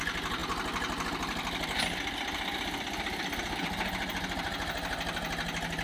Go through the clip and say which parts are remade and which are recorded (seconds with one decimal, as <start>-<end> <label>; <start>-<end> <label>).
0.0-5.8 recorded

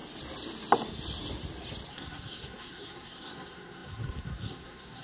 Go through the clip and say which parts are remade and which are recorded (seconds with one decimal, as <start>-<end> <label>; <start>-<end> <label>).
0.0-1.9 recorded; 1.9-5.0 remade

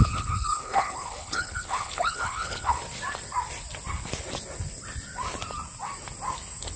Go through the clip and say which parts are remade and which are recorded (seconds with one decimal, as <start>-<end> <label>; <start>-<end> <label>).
0.0-2.8 remade; 2.8-6.8 recorded

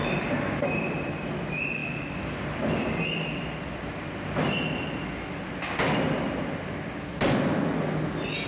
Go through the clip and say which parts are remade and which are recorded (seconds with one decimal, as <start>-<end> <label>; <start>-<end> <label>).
0.0-8.5 recorded

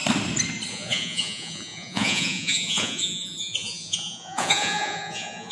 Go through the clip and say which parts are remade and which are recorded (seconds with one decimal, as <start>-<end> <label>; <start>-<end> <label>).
0.0-0.7 recorded; 0.7-5.5 remade

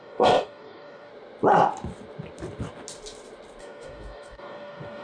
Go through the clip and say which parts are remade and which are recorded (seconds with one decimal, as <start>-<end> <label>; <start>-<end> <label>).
0.0-1.1 remade; 1.1-3.6 recorded; 3.6-5.0 remade

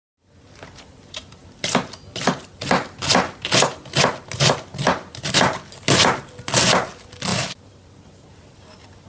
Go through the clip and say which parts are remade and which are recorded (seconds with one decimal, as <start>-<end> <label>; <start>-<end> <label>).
0.0-9.1 recorded

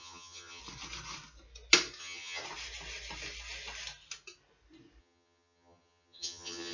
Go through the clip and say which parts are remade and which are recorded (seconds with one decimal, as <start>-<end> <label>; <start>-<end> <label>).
0.0-0.6 remade; 0.6-2.0 recorded; 2.0-2.4 remade; 2.4-5.0 recorded; 5.0-6.7 remade